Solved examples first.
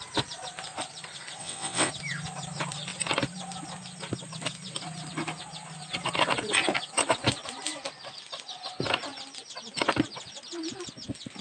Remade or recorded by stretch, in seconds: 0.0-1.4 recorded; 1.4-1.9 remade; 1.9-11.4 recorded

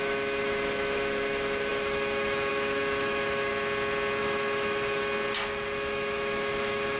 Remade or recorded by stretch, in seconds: 0.0-3.5 remade; 3.5-4.2 recorded; 4.2-5.0 remade; 5.0-5.5 recorded; 5.5-7.0 remade

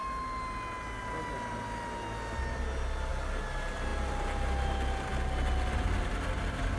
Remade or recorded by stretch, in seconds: 0.0-6.8 recorded